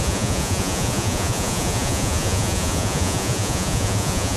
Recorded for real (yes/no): no